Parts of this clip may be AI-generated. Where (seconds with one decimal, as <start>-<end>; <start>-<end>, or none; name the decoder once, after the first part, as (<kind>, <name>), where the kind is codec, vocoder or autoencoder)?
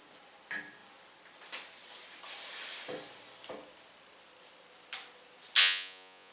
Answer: 5.6-6.3 (vocoder, Vocos)